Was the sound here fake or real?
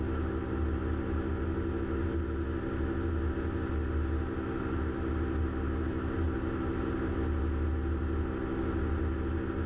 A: real